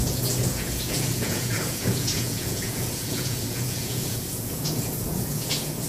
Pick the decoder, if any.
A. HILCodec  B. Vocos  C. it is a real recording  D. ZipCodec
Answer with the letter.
B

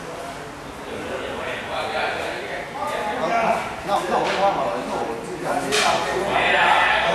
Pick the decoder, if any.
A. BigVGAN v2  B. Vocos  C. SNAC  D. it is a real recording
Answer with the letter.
D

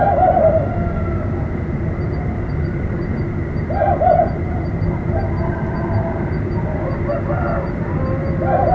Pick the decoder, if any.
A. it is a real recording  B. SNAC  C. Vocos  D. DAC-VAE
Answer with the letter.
A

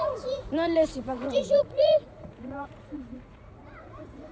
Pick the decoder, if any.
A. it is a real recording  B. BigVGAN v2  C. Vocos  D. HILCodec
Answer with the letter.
C